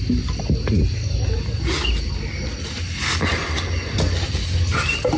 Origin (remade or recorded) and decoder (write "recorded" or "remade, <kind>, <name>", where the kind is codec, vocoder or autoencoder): recorded